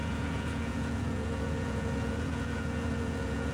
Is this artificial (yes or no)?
yes